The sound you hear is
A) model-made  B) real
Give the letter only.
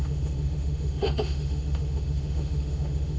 A